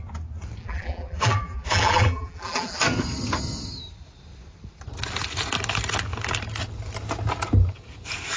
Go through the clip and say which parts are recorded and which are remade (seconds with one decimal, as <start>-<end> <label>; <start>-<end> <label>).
0.0-0.6 recorded; 0.6-2.8 remade; 2.8-8.4 recorded